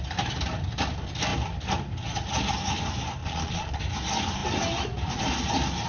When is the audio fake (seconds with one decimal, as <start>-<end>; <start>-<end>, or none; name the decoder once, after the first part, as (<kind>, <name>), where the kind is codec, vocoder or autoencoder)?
3.2-3.8 (vocoder, Vocos)